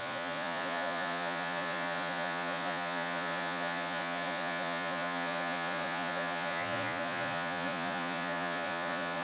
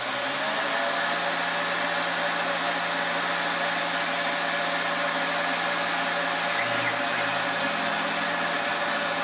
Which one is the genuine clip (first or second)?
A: second